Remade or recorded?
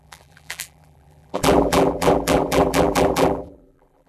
remade